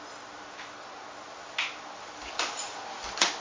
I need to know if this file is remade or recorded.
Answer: recorded